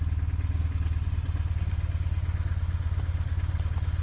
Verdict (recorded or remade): recorded